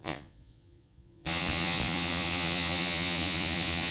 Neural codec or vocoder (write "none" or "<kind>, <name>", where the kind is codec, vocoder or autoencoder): vocoder, Vocos